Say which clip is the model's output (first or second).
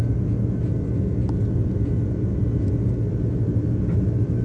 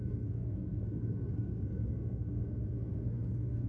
second